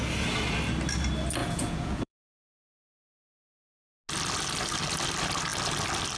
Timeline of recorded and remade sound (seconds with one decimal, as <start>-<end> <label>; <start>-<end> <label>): 0.0-1.4 recorded; 1.4-3.5 remade; 3.5-6.2 recorded